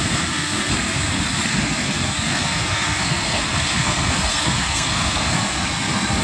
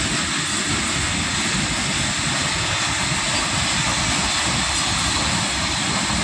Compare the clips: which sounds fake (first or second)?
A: first